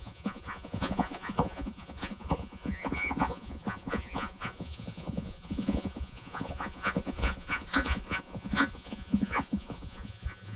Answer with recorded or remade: remade